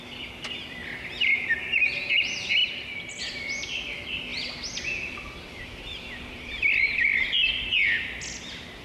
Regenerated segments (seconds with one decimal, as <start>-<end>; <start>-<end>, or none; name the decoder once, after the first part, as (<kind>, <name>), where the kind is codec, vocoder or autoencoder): 2.6-3.2 (vocoder, BigVGAN v2); 4.3-7.6